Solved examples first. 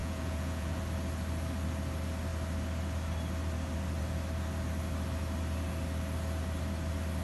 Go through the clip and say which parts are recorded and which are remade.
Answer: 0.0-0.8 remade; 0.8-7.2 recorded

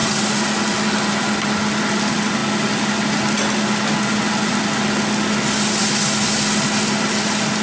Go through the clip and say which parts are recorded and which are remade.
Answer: 0.0-7.6 recorded

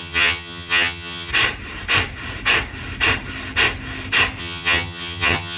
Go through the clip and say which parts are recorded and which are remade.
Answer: 0.0-1.3 remade; 1.3-4.4 recorded; 4.4-5.6 remade

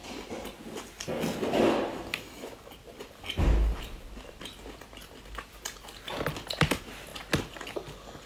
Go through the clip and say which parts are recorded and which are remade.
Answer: 0.0-8.3 recorded